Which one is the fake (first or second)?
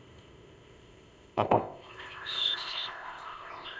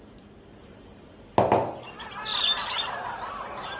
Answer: first